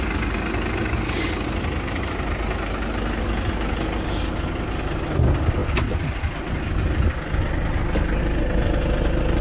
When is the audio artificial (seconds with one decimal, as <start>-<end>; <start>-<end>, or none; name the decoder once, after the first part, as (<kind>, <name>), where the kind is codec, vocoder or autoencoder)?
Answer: none